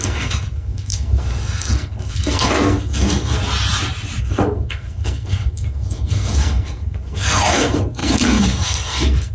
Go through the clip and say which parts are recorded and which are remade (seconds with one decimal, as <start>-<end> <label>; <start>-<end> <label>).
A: 0.0-3.4 remade; 3.4-4.2 recorded; 4.2-9.3 remade